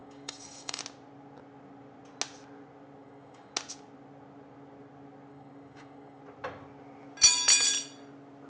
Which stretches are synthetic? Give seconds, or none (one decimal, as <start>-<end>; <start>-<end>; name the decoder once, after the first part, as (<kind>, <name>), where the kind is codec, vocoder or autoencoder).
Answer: 0.0-0.8 (codec, DAC); 3.0-3.5; 5.3-6.2